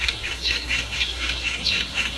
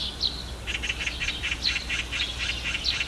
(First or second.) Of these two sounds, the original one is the second